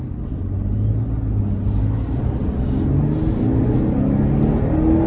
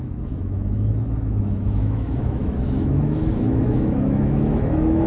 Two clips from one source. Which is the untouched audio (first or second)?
first